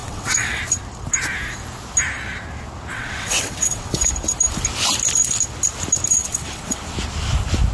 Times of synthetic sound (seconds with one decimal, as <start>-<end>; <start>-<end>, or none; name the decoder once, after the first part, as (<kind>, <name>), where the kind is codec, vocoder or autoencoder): 0.0-0.6 (vocoder, WaveNeXt); 2.9-4.1; 6.2-6.8